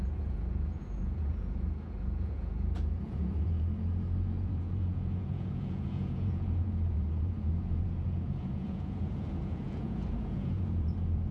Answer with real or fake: fake